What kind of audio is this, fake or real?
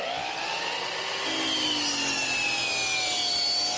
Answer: real